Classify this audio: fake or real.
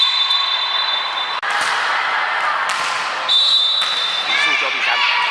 real